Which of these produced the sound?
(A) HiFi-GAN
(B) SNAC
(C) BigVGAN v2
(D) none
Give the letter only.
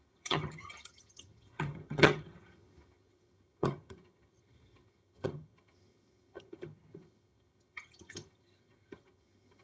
A